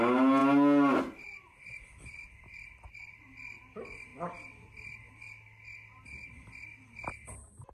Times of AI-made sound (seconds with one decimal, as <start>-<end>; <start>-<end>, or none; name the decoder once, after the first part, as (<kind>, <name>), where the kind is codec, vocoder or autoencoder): none